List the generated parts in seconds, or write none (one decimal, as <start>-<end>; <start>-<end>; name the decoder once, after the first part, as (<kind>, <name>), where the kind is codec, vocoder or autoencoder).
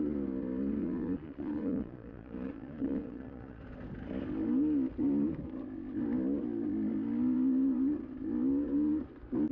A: 0.8-3.6 (vocoder, Vocos)